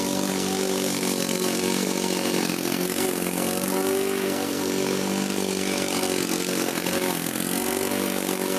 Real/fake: fake